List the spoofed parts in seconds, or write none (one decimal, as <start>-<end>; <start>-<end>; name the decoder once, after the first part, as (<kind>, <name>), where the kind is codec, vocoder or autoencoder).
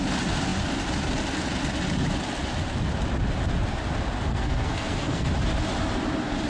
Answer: 4.3-5.3 (codec, SNAC)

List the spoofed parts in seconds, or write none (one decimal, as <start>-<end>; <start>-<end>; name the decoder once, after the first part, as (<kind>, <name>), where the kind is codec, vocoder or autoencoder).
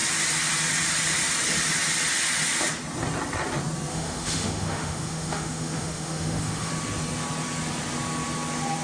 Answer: 3.9-6.7 (autoencoder, DAC-VAE)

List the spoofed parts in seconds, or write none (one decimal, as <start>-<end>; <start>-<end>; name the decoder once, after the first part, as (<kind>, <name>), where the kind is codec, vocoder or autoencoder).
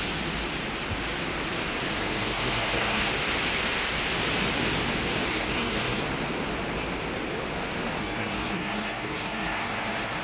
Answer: 2.0-3.1 (codec, SNAC); 5.3-6.0; 8.0-10.2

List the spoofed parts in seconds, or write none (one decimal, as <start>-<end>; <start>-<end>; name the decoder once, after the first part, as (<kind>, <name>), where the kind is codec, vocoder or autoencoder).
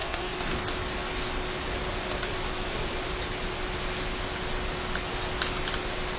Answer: 0.0-0.6 (codec, DAC)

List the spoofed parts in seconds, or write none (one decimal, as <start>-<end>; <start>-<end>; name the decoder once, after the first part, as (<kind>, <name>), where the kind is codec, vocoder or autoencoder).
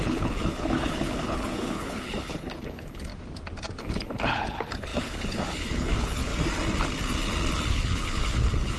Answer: 0.0-3.1 (codec, HILCodec); 3.8-6.3; 7.7-8.8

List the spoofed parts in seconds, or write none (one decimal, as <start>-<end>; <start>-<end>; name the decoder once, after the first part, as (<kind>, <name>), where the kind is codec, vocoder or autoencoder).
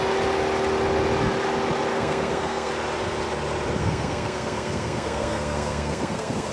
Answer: 1.9-2.7 (codec, SNAC); 3.8-6.5